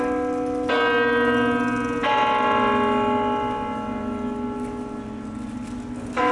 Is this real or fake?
real